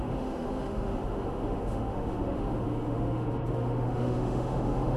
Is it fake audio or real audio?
fake